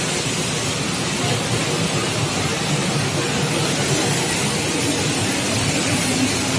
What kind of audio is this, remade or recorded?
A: recorded